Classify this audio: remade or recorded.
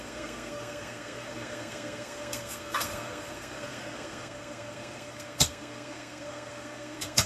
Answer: remade